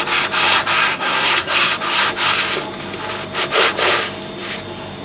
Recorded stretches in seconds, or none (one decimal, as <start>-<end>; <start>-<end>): 0.0-0.9; 1.7-5.0